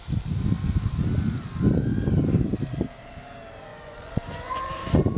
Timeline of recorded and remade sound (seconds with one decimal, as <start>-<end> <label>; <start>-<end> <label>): 0.0-3.7 recorded; 3.7-5.2 remade